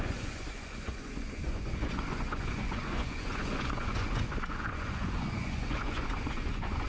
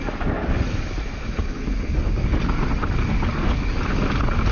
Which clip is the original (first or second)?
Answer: second